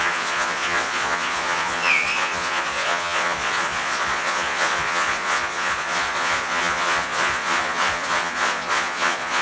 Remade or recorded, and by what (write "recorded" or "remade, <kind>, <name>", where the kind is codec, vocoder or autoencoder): remade, vocoder, Vocos